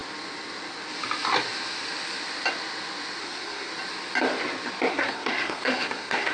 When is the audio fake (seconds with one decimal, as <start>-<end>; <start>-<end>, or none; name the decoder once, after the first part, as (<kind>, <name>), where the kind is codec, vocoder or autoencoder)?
3.2-3.7 (codec, SNAC); 4.9-6.3